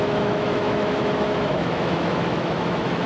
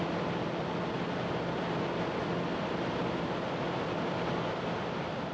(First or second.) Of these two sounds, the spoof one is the first